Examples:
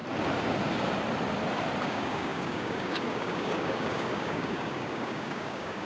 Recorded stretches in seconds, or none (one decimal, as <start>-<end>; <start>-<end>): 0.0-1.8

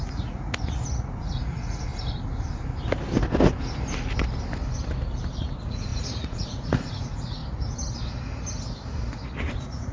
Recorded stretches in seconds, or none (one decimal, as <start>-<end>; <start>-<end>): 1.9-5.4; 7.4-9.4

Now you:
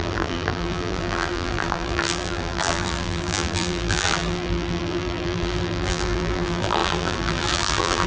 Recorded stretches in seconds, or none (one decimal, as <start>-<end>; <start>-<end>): none

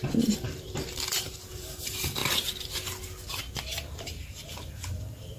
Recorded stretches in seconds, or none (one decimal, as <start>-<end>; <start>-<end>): 2.2-3.8